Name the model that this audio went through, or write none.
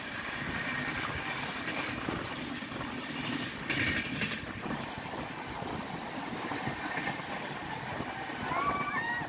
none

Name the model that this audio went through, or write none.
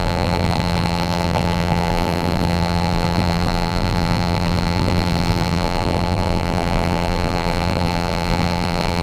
vocoder, BigVGAN v2